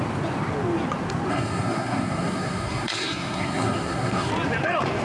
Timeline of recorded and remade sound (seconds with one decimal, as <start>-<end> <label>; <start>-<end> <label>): 0.0-1.3 recorded; 1.3-4.3 remade; 4.3-5.0 recorded